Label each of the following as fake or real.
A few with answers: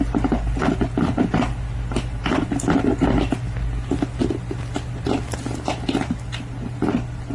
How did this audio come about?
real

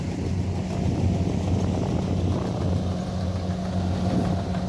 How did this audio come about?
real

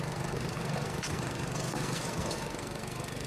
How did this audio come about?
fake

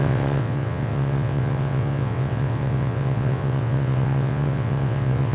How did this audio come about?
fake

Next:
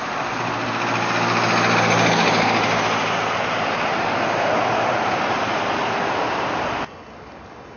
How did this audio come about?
real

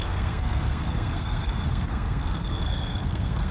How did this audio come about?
fake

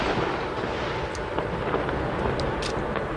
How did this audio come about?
real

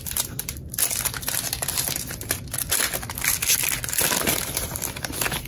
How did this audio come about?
fake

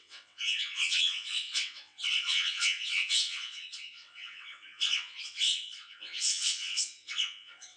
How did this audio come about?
fake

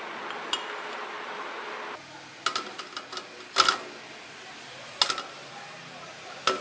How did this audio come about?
real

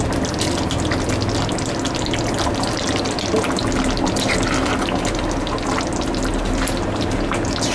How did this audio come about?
real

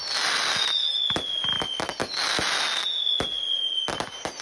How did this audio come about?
real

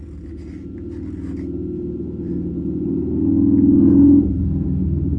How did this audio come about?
real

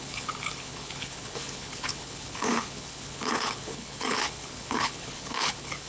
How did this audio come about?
fake